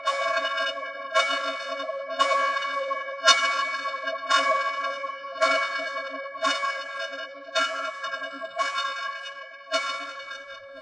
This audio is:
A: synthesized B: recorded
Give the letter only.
A